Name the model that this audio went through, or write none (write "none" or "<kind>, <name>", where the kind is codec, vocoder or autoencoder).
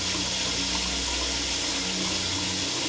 none